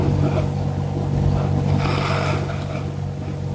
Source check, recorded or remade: recorded